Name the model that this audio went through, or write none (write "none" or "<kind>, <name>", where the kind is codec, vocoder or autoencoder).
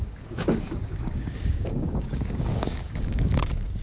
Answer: codec, DAC